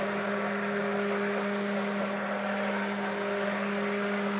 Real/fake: real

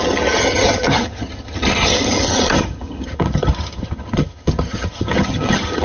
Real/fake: fake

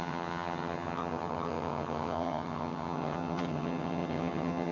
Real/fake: fake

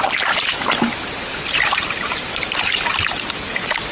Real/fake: real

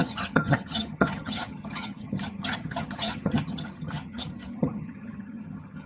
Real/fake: fake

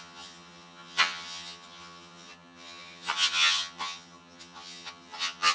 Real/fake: fake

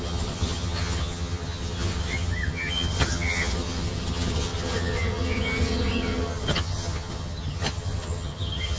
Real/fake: fake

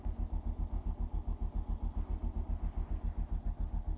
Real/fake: real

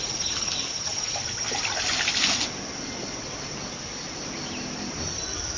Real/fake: real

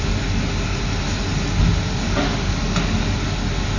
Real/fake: real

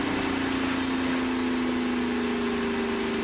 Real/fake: real